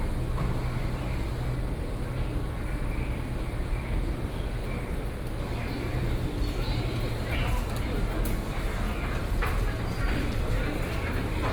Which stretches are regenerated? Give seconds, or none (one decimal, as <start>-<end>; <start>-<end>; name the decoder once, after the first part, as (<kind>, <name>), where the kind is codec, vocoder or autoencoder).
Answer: none